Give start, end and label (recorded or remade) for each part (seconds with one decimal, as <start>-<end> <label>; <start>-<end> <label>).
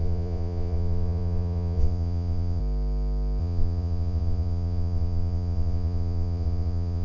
0.0-2.6 remade; 2.6-3.4 recorded; 3.4-7.0 remade